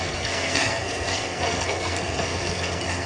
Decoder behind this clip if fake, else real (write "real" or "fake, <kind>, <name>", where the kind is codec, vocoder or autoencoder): fake, codec, SNAC